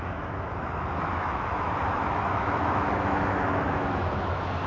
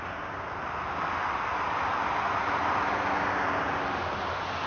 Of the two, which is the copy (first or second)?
first